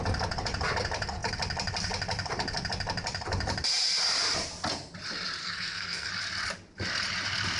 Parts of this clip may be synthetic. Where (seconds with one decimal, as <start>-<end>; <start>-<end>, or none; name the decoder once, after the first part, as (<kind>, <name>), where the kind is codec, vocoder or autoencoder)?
5.4-6.1 (codec, SNAC)